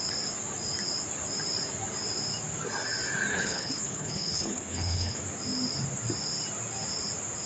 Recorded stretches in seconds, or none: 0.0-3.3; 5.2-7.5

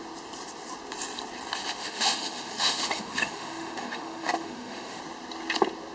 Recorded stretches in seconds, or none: 0.0-1.8; 5.0-5.9

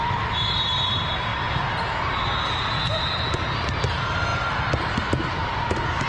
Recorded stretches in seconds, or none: 0.0-6.1